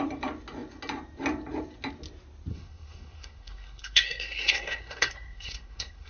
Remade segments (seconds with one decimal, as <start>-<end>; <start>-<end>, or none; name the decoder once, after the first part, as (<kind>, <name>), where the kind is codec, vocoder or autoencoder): 2.5-6.1 (codec, SNAC)